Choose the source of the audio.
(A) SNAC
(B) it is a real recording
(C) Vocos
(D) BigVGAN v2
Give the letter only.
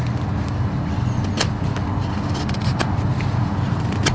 B